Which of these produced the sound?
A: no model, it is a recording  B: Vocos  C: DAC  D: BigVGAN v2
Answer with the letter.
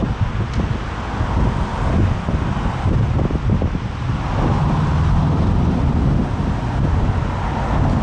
A